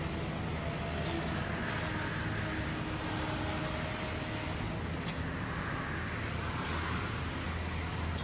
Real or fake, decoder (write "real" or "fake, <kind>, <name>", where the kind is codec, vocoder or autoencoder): real